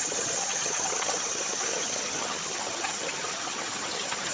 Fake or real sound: fake